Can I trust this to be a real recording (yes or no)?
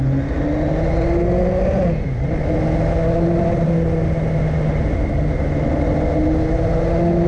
yes